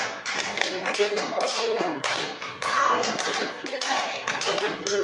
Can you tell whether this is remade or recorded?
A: remade